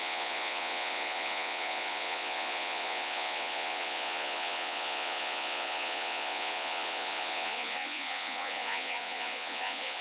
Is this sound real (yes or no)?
no